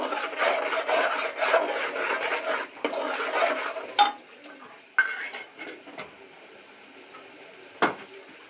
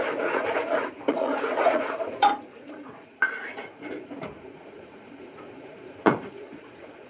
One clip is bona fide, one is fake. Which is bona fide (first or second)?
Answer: first